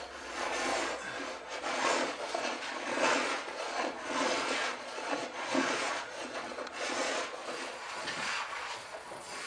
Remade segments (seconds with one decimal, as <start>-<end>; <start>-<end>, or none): 0.0-0.7; 1.6-9.5